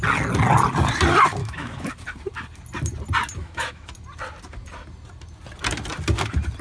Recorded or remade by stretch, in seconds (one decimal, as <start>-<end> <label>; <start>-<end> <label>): 0.0-1.4 recorded; 1.4-1.9 remade; 1.9-3.4 recorded; 3.4-3.9 remade; 3.9-6.6 recorded